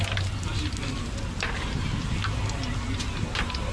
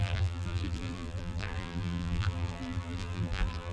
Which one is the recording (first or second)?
first